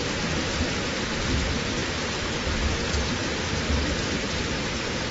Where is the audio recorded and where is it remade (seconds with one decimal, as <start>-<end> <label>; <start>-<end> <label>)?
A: 0.0-1.2 recorded; 1.2-5.1 remade